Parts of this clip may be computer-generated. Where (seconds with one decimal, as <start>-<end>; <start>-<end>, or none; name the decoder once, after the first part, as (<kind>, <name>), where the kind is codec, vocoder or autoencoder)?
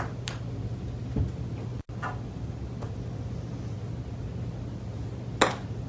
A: none